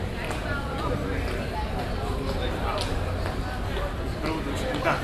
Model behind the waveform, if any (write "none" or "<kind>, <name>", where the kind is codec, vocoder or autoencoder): none